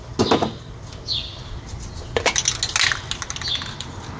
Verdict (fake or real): real